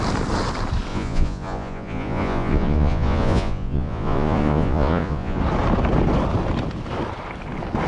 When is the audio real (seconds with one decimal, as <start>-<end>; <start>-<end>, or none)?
0.0-0.9; 5.4-7.9